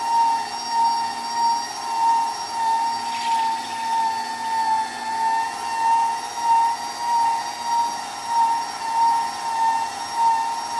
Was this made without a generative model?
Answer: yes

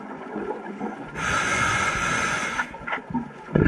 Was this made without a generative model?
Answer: no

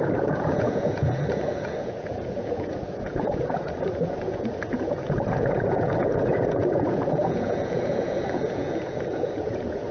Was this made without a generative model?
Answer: no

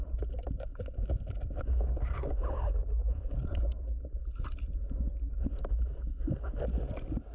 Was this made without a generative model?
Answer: yes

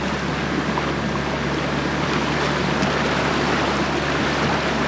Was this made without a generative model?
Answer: yes